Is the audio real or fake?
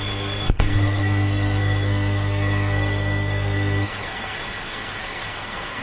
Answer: fake